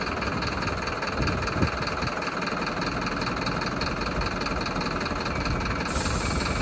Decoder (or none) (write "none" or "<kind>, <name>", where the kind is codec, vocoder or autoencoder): none